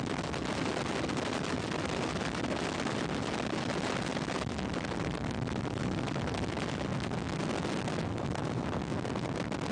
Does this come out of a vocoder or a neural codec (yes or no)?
no